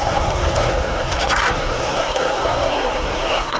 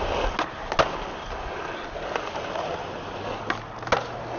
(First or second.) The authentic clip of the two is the second